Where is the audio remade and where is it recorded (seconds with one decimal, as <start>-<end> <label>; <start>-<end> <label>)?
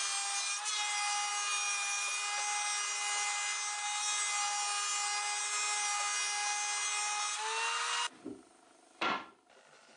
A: 0.0-10.0 recorded